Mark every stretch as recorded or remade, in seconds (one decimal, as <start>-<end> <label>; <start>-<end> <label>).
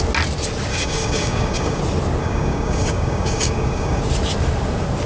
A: 0.0-0.7 recorded; 0.7-1.8 remade; 1.8-2.2 recorded; 2.2-4.0 remade; 4.0-5.1 recorded